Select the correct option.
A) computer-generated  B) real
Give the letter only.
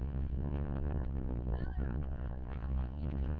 A